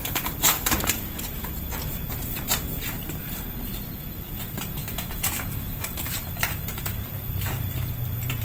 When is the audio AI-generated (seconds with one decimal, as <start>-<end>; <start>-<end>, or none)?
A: 0.0-8.4